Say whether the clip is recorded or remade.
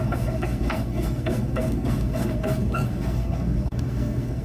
remade